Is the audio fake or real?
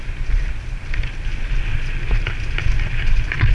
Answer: real